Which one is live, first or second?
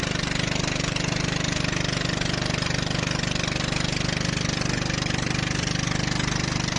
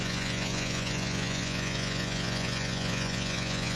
first